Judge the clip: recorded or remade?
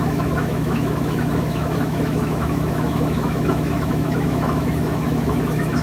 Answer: remade